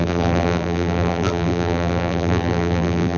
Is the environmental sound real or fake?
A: fake